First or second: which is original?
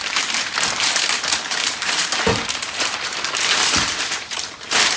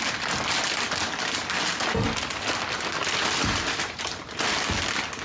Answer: second